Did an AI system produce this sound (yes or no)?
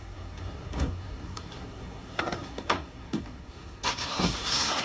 yes